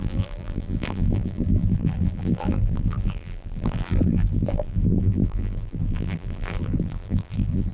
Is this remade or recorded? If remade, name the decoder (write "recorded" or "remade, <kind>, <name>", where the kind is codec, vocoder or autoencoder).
remade, vocoder, BigVGAN v2